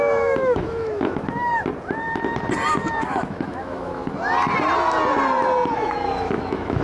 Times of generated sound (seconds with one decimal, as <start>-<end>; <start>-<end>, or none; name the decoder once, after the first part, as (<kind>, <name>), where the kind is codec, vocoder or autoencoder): 0.0-1.5 (autoencoder, DAC-VAE); 2.7-4.0; 5.7-6.8